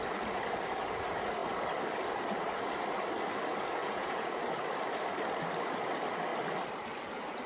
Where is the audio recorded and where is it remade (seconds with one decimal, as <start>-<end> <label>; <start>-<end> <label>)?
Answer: 0.0-3.8 recorded; 3.8-4.4 remade; 4.4-7.5 recorded